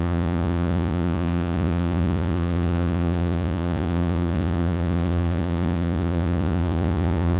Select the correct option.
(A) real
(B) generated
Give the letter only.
B